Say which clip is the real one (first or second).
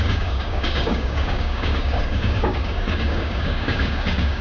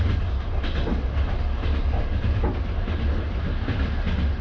second